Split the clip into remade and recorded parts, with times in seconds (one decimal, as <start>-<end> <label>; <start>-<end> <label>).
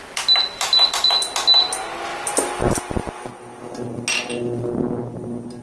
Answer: 0.0-5.6 recorded